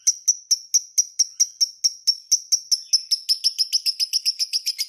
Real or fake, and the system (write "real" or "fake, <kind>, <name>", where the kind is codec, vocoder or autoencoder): real